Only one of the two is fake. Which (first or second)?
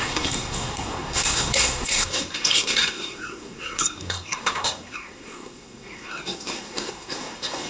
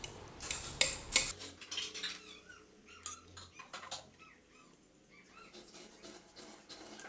first